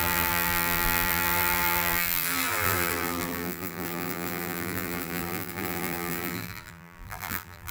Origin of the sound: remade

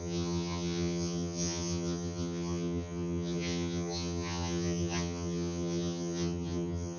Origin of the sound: remade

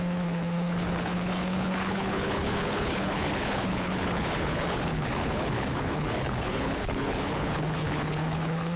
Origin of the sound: remade